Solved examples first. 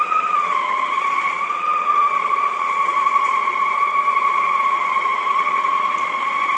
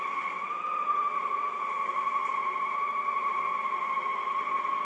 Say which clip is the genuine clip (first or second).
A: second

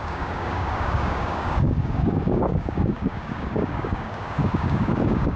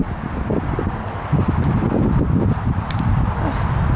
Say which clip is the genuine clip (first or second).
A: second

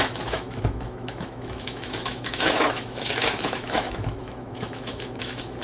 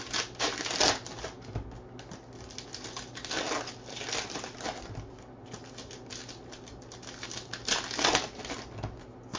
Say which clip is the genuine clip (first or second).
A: second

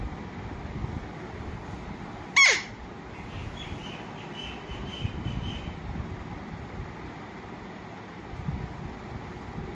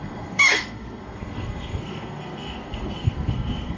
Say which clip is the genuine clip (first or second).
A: first